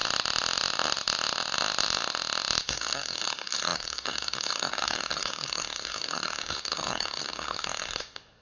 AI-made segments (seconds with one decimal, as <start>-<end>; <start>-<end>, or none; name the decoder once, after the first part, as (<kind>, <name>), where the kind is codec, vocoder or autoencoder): 2.6-8.4 (codec, SNAC)